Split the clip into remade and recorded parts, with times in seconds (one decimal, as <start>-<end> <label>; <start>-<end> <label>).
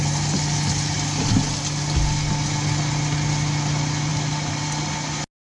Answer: 0.0-5.4 recorded